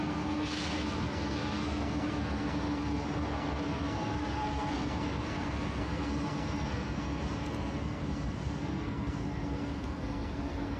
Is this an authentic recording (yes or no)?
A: no